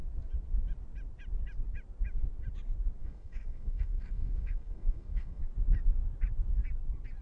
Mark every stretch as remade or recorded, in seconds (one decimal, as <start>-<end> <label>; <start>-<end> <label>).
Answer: 0.0-3.0 recorded; 3.0-5.4 remade; 5.4-7.2 recorded